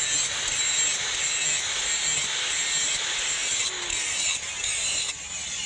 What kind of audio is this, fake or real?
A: real